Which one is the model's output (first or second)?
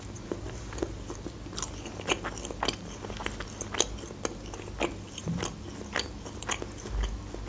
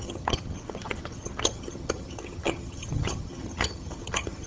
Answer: second